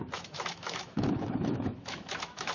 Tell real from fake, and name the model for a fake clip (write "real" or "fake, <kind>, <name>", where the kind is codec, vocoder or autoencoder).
fake, autoencoder, DAC-VAE